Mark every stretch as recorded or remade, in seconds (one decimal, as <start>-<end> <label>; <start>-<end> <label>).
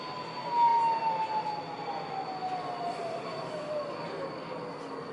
0.0-3.0 recorded; 3.0-4.0 remade; 4.0-5.1 recorded